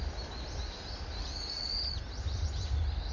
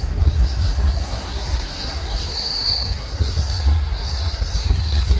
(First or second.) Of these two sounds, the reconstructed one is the second